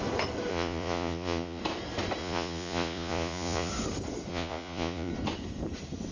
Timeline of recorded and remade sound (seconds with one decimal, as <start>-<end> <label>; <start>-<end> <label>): 0.0-0.5 recorded; 0.5-1.6 remade; 1.6-2.2 recorded; 2.2-3.7 remade; 3.7-4.3 recorded; 4.3-5.1 remade; 5.1-6.1 recorded